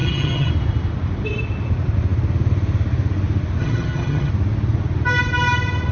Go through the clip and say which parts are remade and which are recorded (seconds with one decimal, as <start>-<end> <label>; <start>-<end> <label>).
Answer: 0.0-0.5 remade; 0.5-3.6 recorded; 3.6-4.3 remade; 4.3-5.9 recorded